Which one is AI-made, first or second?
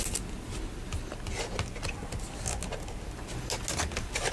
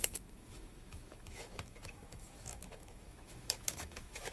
second